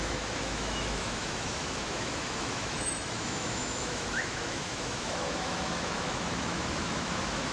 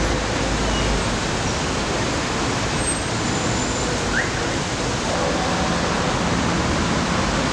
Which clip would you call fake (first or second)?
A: first